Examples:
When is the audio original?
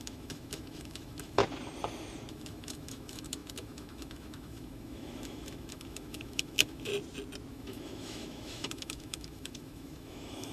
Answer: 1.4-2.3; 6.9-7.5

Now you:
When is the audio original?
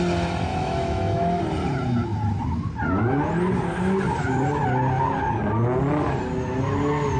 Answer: 0.0-0.5; 1.4-7.2